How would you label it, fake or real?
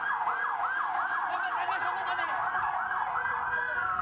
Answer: real